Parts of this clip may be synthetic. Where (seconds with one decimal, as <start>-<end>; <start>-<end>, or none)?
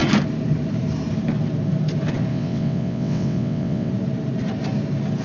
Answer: 2.3-3.9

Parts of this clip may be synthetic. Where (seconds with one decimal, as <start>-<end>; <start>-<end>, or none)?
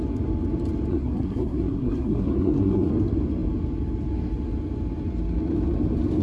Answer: 0.9-2.9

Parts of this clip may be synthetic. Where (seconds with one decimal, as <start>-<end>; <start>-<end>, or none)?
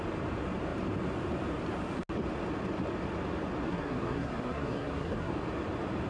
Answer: 3.6-5.3